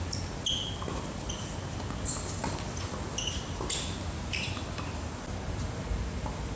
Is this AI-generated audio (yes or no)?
no